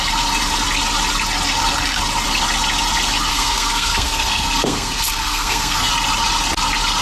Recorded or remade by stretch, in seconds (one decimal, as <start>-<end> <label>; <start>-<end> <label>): 0.0-3.3 recorded; 3.3-5.9 remade; 5.9-7.0 recorded